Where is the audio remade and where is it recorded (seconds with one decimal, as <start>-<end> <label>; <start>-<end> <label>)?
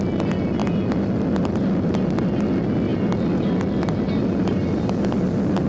0.0-0.6 recorded; 0.6-1.5 remade; 1.5-2.9 recorded; 2.9-5.1 remade; 5.1-5.7 recorded